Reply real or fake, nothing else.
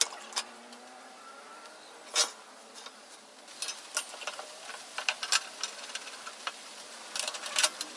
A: real